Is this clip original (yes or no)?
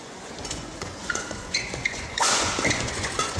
no